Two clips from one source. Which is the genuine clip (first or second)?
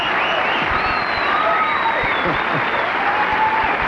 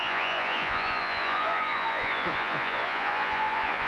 first